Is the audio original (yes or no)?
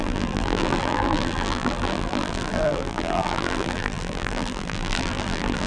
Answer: no